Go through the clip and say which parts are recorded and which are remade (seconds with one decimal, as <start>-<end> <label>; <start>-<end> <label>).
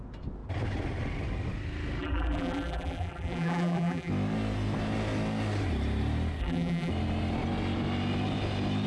0.0-2.0 recorded; 2.0-4.1 remade; 4.1-6.4 recorded; 6.4-6.9 remade; 6.9-8.9 recorded